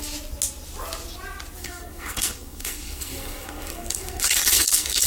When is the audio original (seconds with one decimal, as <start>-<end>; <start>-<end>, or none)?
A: 0.0-1.6